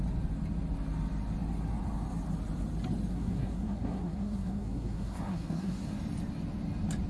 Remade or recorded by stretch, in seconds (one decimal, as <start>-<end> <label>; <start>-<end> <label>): 0.0-3.1 recorded; 3.1-6.0 remade; 6.0-7.1 recorded